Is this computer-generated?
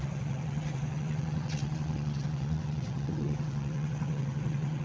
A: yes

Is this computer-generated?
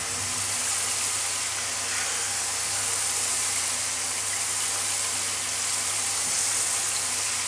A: no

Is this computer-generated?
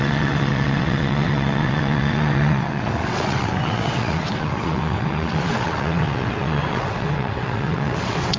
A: yes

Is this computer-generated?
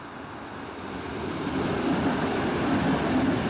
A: no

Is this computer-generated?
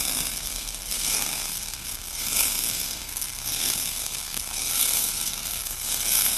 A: yes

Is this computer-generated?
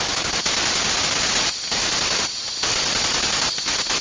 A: no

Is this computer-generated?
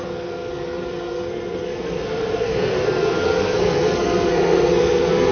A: yes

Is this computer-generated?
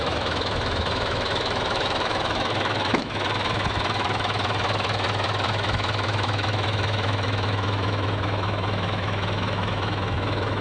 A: yes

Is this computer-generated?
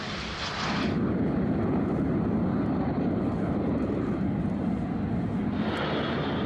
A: no